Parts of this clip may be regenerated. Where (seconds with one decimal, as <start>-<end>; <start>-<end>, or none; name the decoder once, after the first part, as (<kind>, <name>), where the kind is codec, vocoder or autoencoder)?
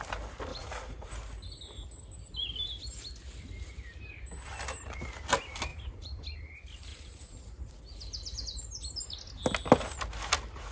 0.5-1.1 (vocoder, Vocos); 5.7-6.2; 6.9-7.8